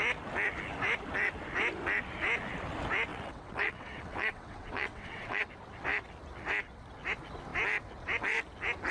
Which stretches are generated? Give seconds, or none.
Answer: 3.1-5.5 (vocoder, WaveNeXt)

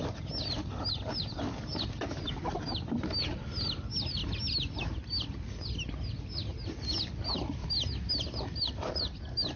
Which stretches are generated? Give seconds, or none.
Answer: none

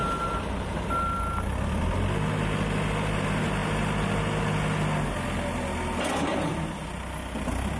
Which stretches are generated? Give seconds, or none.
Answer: none

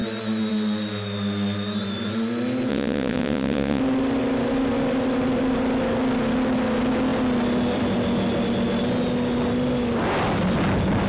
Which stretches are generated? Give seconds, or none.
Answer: 2.7-3.8 (vocoder, WaveNeXt)

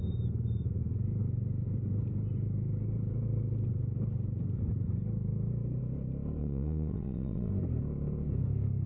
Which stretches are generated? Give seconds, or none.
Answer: 6.4-7.5 (vocoder, WaveNeXt)

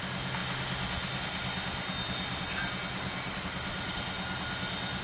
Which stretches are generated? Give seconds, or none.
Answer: none